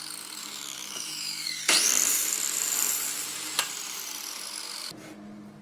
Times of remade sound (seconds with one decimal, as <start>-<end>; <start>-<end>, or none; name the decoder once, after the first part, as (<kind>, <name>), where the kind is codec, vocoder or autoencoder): 0.4-1.6 (autoencoder, DAC-VAE)